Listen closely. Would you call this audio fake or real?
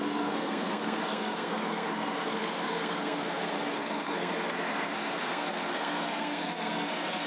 fake